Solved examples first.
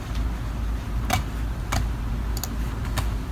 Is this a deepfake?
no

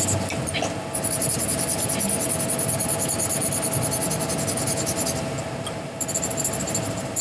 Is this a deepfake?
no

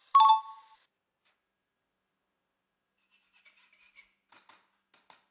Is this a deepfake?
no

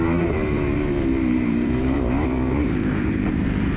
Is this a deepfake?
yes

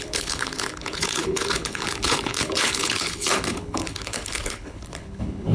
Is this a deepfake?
yes